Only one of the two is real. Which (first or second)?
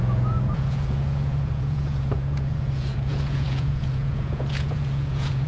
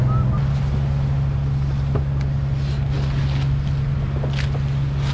second